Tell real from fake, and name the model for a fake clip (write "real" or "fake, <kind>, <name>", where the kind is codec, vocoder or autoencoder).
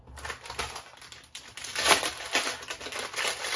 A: real